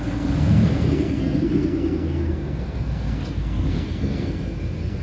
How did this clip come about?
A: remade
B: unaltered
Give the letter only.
A